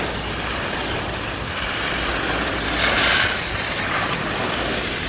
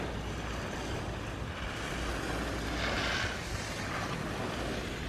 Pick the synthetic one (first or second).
first